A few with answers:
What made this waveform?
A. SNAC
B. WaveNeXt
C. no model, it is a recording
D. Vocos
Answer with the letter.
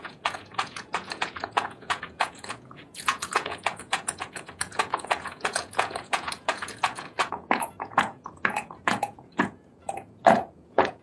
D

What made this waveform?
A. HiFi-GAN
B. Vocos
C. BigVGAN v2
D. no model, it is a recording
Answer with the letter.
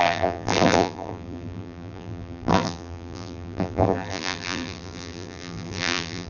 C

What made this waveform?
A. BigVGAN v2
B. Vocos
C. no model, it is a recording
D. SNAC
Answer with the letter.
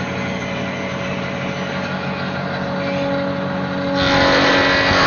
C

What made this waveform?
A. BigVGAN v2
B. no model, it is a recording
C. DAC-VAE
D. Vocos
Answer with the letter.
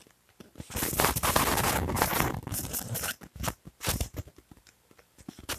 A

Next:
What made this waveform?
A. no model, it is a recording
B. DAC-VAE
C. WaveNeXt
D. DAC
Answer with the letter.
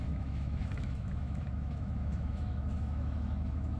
B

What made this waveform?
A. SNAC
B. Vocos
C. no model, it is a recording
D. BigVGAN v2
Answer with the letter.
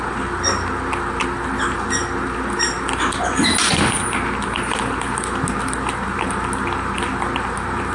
C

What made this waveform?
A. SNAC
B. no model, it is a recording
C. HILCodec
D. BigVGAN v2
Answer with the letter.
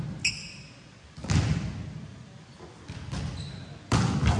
B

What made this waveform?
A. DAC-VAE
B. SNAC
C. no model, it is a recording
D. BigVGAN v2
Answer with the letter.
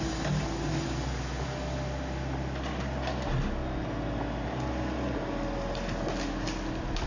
C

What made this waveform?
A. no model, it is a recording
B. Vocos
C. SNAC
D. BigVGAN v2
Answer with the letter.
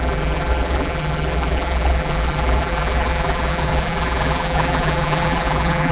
D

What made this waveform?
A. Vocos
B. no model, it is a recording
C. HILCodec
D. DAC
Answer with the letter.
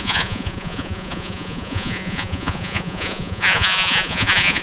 A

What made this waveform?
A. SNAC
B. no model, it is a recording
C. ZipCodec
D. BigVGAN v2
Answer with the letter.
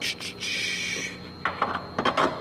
B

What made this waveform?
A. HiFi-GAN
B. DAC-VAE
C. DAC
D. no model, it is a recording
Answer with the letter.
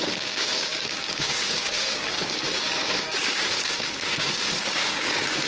C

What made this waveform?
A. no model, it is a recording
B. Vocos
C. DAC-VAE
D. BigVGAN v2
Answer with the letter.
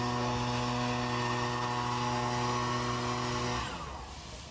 A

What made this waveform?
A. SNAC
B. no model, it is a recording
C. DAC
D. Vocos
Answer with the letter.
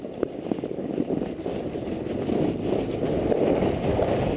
B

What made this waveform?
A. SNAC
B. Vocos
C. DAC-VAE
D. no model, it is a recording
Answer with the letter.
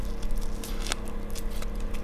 D